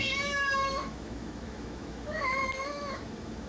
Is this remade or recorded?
remade